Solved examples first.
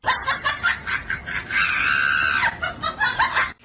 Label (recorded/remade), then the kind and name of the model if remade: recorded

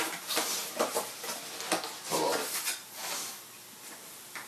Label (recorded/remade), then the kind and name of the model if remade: recorded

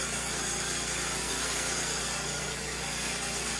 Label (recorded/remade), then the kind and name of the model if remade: remade, codec, SNAC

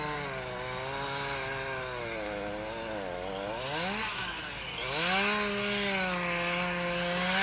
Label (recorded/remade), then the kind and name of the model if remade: recorded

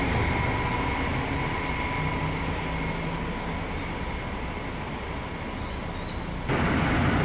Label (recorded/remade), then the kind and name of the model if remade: recorded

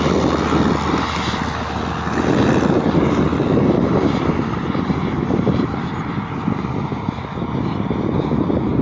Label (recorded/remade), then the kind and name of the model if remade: recorded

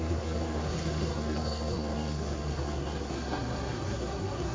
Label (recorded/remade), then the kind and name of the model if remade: remade, codec, SNAC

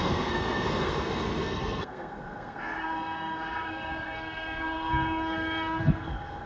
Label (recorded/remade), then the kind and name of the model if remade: remade, codec, SNAC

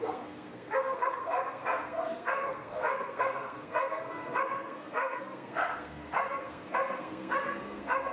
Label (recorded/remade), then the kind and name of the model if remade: remade, codec, SNAC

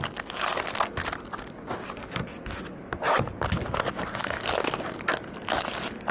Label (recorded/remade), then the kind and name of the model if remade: recorded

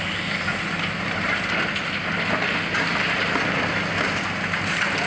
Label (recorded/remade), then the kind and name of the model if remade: recorded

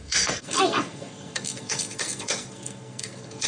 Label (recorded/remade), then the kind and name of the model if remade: remade, codec, SNAC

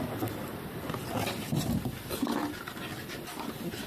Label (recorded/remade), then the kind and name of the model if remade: recorded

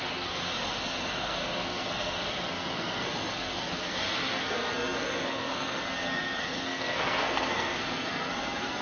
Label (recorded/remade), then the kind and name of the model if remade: remade, codec, SNAC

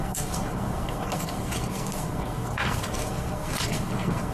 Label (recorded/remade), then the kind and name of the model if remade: remade, codec, SNAC